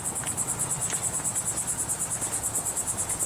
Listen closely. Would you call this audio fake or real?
real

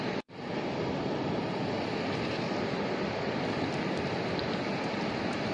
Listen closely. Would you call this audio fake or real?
real